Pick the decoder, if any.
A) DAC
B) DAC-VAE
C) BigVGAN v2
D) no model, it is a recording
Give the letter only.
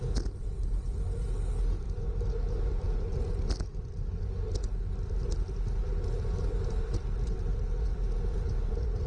D